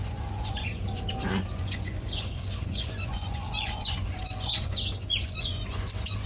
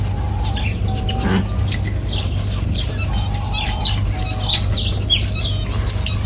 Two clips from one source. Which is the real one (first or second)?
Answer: second